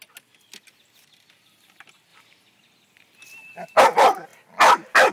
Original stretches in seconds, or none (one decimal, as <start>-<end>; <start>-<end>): 0.0-5.1